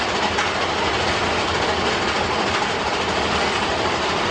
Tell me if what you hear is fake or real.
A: real